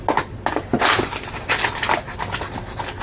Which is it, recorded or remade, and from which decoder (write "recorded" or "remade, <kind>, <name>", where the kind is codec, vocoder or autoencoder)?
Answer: recorded